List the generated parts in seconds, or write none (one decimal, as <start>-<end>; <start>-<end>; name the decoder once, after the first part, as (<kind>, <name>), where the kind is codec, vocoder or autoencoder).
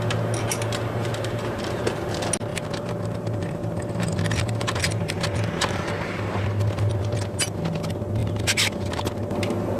1.0-1.8 (vocoder, BigVGAN v2); 2.5-6.4; 8.2-8.9